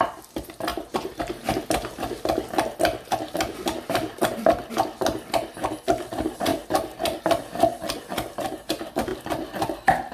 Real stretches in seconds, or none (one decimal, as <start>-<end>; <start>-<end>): 0.0-10.1